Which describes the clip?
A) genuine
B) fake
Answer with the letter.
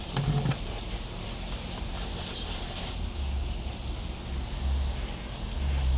A